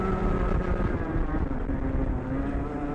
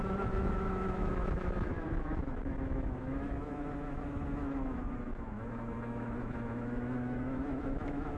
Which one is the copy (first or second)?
second